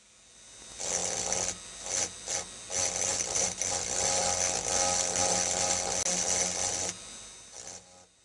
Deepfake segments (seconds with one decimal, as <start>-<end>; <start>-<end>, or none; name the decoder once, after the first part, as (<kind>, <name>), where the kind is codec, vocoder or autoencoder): 3.1-3.6 (vocoder, BigVGAN v2)

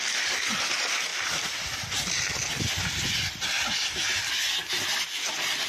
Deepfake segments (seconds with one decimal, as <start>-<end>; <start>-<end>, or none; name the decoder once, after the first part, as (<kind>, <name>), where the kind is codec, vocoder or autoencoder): 1.1-1.7 (vocoder, BigVGAN v2)

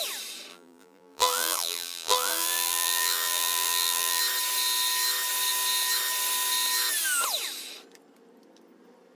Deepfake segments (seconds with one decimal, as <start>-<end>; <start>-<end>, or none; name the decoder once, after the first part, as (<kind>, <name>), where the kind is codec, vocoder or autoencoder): 0.5-4.2 (vocoder, BigVGAN v2)

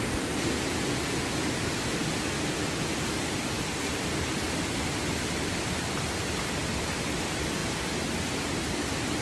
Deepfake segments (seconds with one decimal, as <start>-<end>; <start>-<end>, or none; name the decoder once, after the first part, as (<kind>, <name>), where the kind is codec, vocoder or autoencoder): 5.5-6.7 (vocoder, BigVGAN v2)

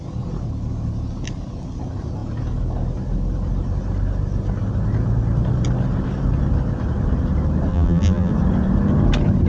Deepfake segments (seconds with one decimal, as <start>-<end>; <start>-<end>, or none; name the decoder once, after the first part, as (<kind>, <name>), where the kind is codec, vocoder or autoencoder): 7.7-8.3 (vocoder, BigVGAN v2)